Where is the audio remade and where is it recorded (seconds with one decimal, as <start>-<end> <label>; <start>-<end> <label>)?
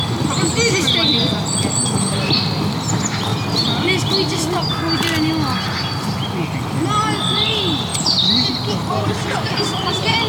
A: 0.0-10.3 recorded